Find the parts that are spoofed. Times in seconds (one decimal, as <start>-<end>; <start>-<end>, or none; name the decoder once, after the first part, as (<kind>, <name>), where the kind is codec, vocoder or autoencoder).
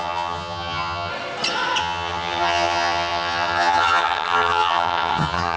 0.0-1.1 (vocoder, HiFi-GAN); 1.8-5.6